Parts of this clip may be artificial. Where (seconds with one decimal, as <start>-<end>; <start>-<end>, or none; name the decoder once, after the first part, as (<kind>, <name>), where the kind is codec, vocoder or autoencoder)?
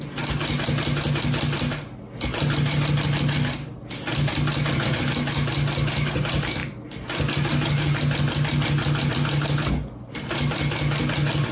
none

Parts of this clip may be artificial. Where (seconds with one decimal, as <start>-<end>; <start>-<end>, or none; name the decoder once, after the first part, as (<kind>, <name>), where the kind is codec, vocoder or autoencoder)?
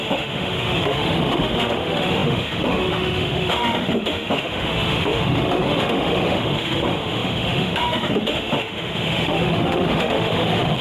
0.0-10.8 (autoencoder, DAC-VAE)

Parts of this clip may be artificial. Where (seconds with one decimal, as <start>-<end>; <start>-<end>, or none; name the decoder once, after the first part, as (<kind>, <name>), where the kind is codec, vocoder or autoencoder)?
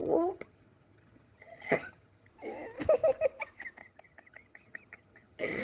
0.0-2.3 (vocoder, HiFi-GAN); 3.8-5.6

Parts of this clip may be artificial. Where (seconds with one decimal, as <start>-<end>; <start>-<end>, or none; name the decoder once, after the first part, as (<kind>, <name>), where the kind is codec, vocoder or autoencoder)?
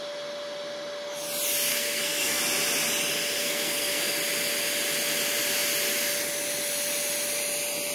1.7-2.4 (codec, SNAC); 3.4-4.1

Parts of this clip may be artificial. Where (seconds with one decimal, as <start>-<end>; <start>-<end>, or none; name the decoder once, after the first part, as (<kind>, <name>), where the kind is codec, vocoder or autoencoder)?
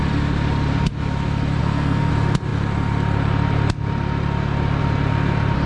1.6-2.1 (codec, SNAC)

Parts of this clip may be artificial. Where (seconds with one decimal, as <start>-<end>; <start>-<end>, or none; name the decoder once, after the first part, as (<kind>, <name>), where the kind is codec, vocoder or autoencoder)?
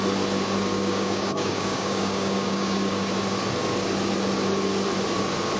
0.7-3.1 (codec, DAC)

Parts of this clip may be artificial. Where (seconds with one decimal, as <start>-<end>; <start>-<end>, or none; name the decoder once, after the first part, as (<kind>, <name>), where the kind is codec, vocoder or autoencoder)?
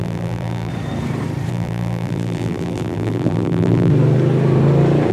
0.0-0.7 (vocoder, BigVGAN v2); 1.5-3.9